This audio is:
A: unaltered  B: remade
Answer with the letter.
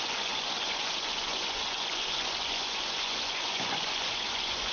B